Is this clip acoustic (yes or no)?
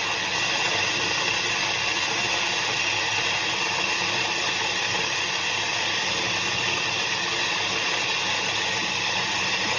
yes